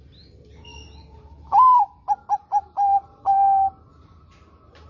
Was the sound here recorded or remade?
recorded